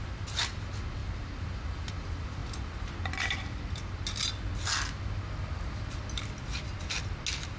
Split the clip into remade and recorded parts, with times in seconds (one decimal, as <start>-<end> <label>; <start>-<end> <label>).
0.0-7.6 recorded